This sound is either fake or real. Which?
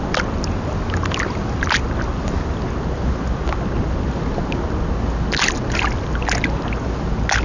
real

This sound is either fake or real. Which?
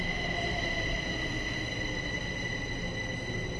real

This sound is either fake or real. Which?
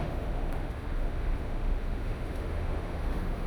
fake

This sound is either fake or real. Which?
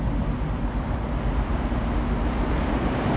real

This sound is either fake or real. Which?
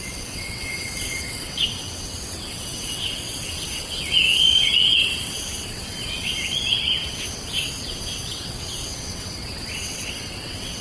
fake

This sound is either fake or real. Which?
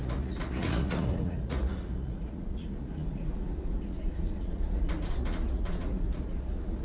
fake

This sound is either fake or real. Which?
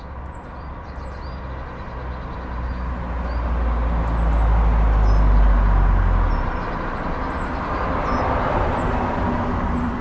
real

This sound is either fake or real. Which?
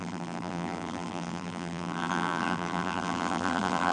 fake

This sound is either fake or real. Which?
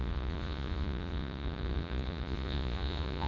fake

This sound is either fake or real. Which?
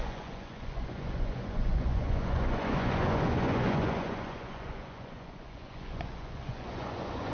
fake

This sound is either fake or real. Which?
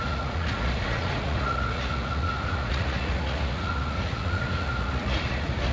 fake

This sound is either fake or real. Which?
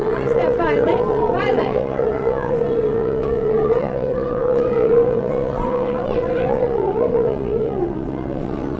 fake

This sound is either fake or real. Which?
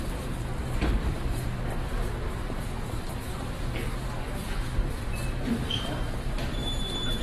fake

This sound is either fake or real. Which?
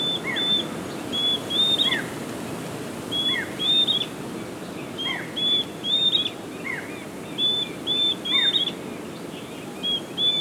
real